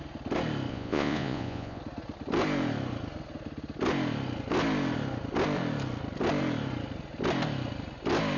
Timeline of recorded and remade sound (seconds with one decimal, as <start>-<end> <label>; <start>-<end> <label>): 0.0-0.7 recorded; 0.7-1.8 remade; 1.8-8.4 recorded